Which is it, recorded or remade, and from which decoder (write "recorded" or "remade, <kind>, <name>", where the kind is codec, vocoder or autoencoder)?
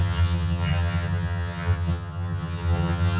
remade, vocoder, HiFi-GAN